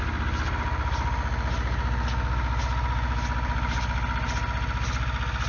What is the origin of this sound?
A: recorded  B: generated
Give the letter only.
A